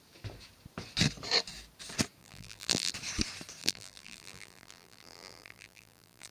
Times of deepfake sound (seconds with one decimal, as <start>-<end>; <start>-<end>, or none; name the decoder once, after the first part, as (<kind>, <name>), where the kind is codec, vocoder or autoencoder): 2.2-2.9 (vocoder, BigVGAN v2); 3.6-6.3